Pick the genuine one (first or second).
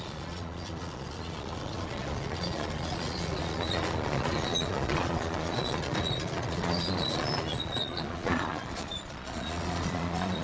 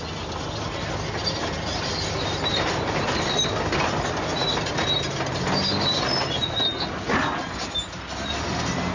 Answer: second